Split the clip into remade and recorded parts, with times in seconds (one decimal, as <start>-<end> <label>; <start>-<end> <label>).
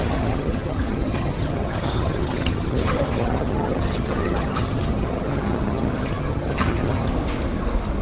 0.0-7.1 remade; 7.1-8.0 recorded